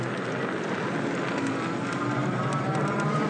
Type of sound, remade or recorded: recorded